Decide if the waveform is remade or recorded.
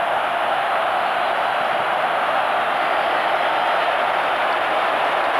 recorded